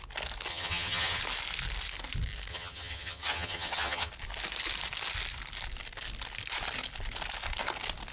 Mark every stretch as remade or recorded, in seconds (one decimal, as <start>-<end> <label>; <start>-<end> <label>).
0.0-0.5 recorded; 0.5-1.2 remade; 1.2-2.5 recorded; 2.5-4.1 remade; 4.1-8.1 recorded